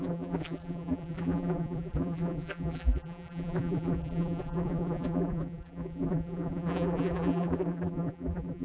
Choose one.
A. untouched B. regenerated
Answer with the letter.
B